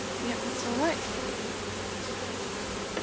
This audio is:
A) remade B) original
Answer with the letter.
B